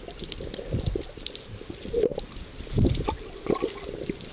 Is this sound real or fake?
real